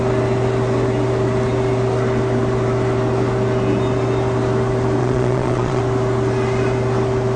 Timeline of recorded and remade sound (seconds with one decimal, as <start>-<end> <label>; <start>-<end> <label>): 0.0-5.0 recorded; 5.0-5.8 remade; 5.8-7.4 recorded